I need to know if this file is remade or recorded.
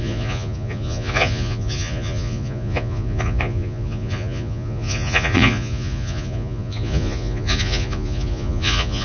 remade